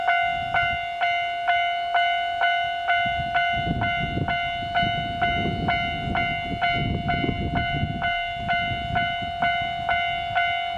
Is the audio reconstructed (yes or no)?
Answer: no